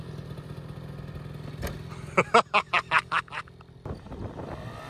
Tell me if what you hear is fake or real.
real